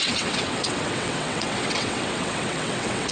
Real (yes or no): no